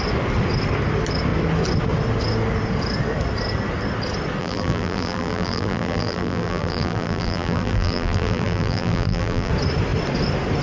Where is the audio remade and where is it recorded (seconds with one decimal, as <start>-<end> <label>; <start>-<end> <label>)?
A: 0.0-4.4 recorded; 4.4-9.5 remade; 9.5-10.6 recorded